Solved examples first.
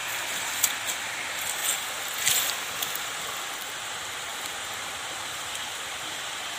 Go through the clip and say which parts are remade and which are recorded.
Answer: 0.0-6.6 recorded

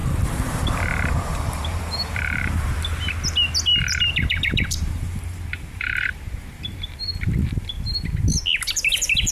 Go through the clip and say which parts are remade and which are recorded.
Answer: 0.0-2.7 remade; 2.7-3.7 recorded; 3.7-8.0 remade; 8.0-9.3 recorded

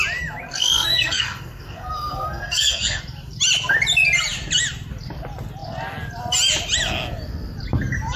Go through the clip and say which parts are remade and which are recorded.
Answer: 0.0-0.5 recorded; 0.5-3.0 remade; 3.0-8.2 recorded

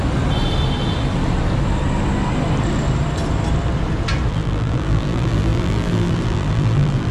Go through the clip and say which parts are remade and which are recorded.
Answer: 0.0-4.3 recorded; 4.3-7.1 remade